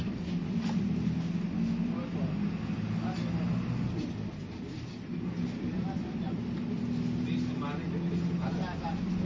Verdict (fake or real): real